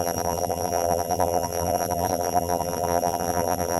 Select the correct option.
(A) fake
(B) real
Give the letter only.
A